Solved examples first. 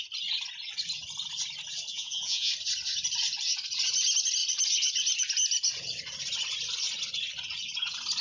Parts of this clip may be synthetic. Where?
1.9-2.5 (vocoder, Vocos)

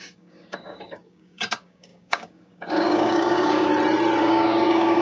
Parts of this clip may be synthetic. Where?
0.0-3.7 (codec, DAC); 4.2-5.0

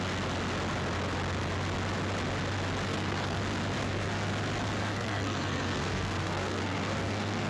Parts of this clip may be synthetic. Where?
2.9-3.4 (codec, SNAC); 3.8-4.3; 4.8-7.5

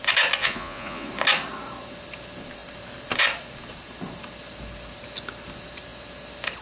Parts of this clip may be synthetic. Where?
0.4-1.1 (vocoder, Vocos)